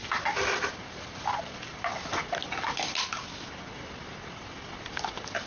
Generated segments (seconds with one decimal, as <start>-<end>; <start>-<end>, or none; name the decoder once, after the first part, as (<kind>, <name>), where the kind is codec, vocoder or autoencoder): none